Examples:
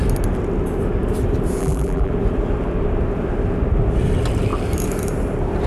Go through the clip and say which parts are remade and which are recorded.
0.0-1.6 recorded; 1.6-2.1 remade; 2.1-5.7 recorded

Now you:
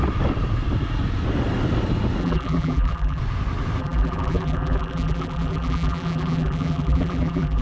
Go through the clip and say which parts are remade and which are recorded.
0.0-2.2 recorded; 2.2-3.2 remade; 3.2-3.8 recorded; 3.8-7.6 remade

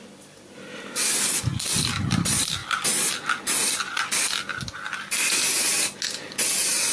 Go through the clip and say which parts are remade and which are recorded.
0.0-6.9 recorded

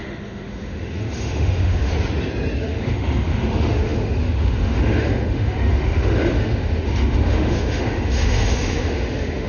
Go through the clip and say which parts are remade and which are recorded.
0.0-1.9 remade; 1.9-2.6 recorded; 2.6-9.5 remade

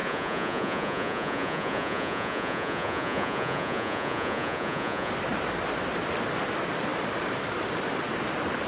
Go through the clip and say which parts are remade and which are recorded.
0.0-5.1 remade; 5.1-8.7 recorded